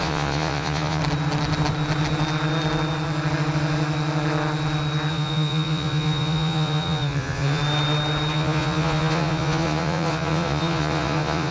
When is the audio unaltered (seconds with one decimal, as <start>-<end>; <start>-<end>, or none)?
1.0-5.1; 7.6-8.3